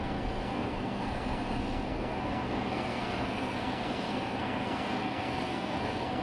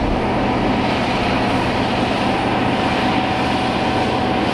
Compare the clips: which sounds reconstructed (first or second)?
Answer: first